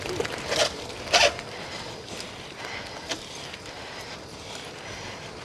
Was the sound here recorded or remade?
recorded